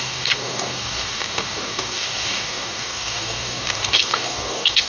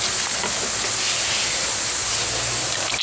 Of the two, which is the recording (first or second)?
second